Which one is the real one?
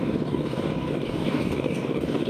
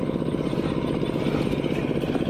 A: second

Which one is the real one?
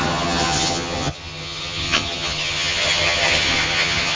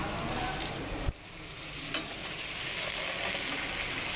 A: second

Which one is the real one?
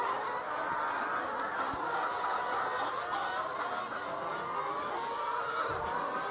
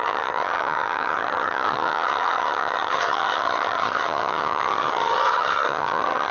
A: first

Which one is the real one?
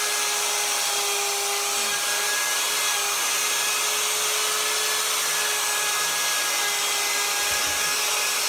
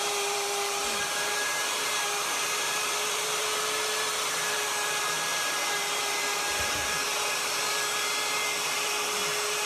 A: first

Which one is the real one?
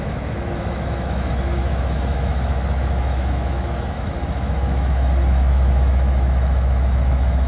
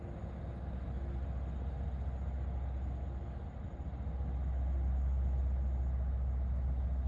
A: second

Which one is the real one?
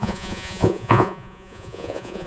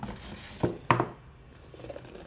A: second